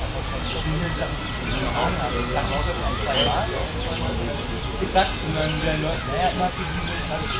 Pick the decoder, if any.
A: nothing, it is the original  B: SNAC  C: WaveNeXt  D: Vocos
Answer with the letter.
A